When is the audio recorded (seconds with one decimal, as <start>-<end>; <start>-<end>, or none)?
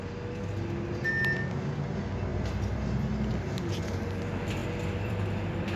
0.0-2.3; 3.3-4.6; 5.2-5.8